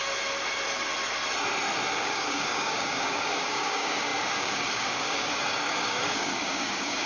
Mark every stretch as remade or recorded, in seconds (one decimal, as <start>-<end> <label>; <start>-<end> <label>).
0.0-1.9 recorded; 1.9-7.1 remade